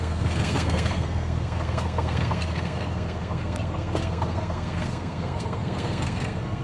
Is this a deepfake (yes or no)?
yes